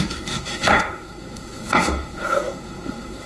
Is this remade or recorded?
remade